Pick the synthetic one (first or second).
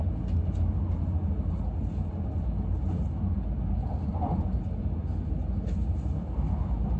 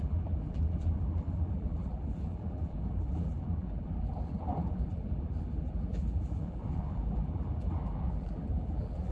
second